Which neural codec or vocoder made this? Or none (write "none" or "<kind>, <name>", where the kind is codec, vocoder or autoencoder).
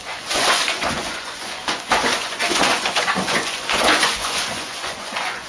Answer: vocoder, Vocos